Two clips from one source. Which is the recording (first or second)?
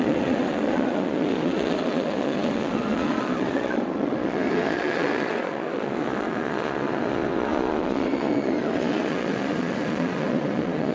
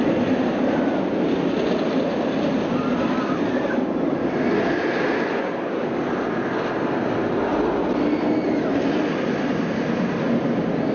second